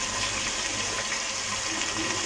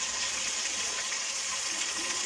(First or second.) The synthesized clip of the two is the second